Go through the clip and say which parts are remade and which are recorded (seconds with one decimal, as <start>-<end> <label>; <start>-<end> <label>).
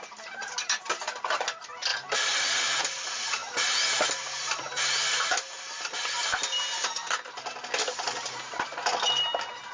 0.0-9.7 recorded